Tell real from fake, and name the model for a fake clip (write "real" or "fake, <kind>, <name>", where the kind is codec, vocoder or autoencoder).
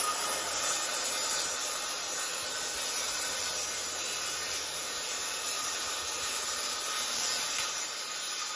fake, vocoder, BigVGAN v2